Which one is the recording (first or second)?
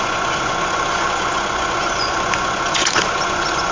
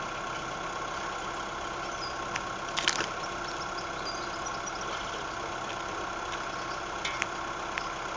second